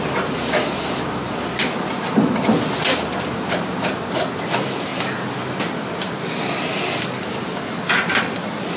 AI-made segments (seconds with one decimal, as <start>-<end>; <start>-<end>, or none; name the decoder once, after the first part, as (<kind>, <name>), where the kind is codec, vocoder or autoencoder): none